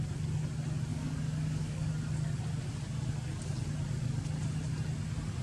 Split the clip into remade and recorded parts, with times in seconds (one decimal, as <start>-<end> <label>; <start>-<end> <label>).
0.0-0.9 recorded; 0.9-1.9 remade; 1.9-5.4 recorded